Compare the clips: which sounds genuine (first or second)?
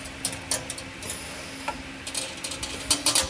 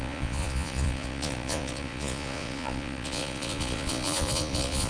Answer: first